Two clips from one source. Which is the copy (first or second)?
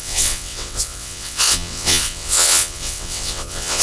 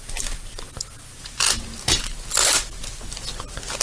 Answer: first